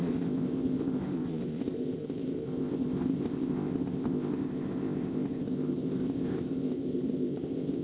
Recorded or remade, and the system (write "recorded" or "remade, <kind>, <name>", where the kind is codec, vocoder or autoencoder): remade, codec, ZipCodec